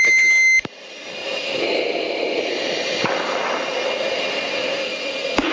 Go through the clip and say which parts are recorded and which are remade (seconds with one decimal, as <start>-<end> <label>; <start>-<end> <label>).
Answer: 0.0-5.5 recorded